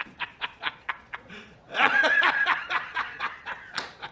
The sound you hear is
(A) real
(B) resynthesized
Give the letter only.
B